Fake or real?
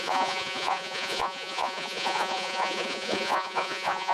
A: fake